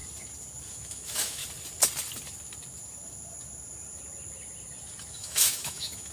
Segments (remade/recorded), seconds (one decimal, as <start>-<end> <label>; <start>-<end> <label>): 0.0-0.7 recorded; 0.7-1.4 remade; 1.4-5.1 recorded; 5.1-6.1 remade